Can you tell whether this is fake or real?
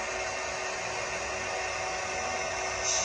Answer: real